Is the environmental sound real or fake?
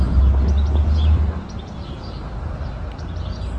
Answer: real